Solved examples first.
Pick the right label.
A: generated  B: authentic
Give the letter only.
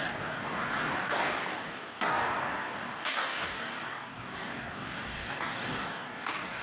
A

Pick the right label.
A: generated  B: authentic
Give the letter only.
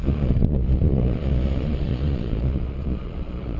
A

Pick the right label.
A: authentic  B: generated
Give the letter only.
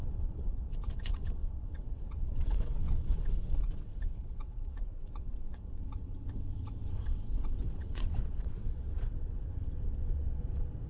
B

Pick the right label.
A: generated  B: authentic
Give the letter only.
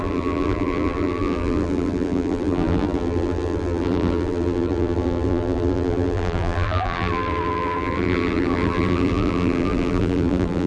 A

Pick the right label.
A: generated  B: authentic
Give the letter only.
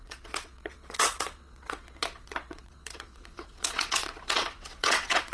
A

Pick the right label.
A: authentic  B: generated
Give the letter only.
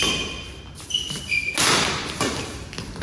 A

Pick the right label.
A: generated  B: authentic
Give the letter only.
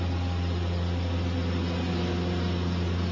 B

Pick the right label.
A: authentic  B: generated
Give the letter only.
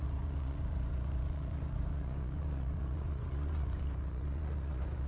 B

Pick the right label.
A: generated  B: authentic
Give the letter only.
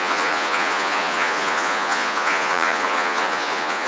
A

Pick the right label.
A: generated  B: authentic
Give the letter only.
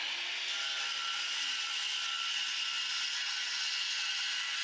B